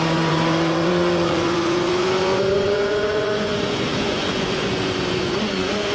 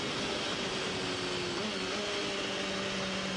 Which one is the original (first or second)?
second